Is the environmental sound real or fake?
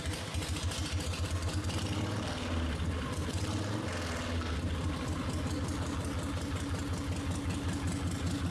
real